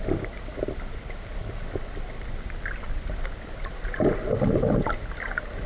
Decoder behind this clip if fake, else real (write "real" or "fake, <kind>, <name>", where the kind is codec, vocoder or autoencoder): real